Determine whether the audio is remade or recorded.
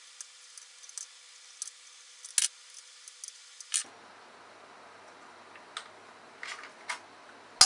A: recorded